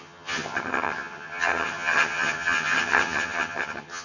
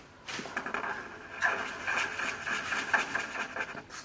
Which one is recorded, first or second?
second